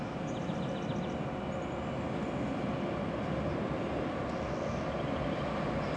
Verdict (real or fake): real